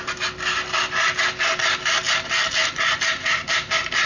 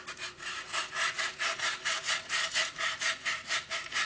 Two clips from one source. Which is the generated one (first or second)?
second